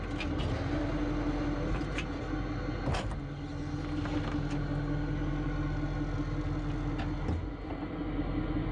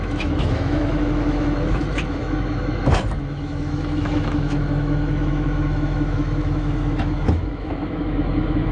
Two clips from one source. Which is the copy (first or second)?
second